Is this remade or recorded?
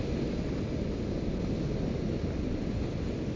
recorded